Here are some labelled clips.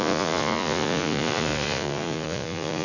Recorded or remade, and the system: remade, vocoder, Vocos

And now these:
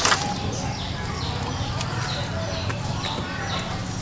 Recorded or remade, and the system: recorded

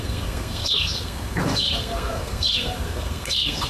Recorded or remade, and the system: remade, codec, SNAC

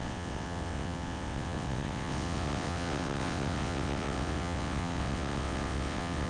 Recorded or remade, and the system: remade, vocoder, WaveNeXt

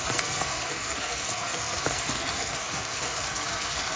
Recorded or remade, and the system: remade, codec, SNAC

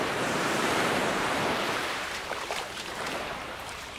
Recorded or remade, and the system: remade, vocoder, BigVGAN v2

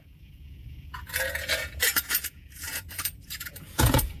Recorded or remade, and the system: remade, vocoder, Vocos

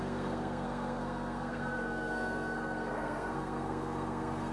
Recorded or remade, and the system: remade, codec, SNAC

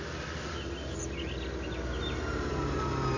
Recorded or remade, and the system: recorded